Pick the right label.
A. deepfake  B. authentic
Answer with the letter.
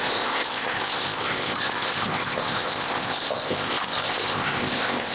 A